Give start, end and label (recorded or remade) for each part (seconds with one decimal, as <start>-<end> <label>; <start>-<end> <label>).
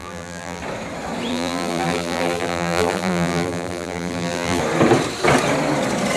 0.0-0.6 remade; 0.6-1.3 recorded; 1.3-4.6 remade; 4.6-6.2 recorded